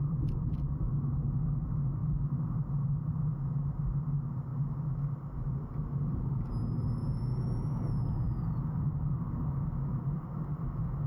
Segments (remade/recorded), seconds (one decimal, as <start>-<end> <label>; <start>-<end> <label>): 0.0-7.0 recorded; 7.0-8.9 remade; 8.9-11.1 recorded